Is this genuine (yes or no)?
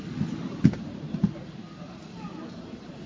yes